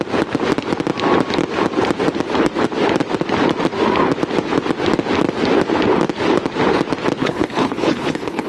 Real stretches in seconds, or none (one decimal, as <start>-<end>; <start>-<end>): 0.0-7.2

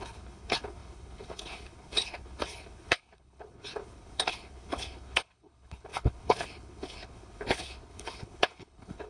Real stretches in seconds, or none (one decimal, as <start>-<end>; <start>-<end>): none

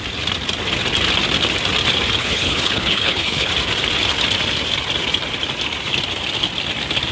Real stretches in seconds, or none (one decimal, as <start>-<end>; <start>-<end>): 0.0-2.2; 3.5-7.1

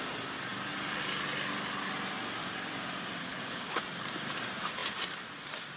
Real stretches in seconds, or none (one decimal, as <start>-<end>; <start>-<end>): 0.0-3.2; 3.8-5.8

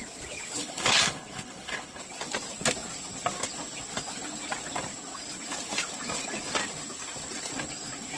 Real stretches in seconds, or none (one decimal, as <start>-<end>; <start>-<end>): 0.0-0.6; 2.0-8.2

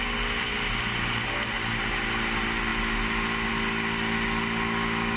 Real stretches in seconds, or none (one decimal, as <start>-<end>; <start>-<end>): 0.0-5.2

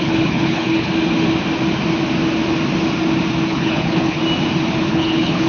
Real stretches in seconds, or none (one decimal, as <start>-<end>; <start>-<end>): 0.9-3.5; 4.2-4.9

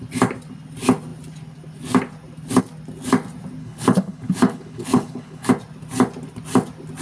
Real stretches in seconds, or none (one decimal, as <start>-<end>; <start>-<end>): 0.0-3.6; 5.5-7.0